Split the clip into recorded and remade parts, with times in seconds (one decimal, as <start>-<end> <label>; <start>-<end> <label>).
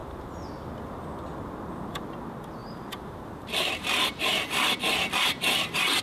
0.0-2.6 recorded; 2.6-6.0 remade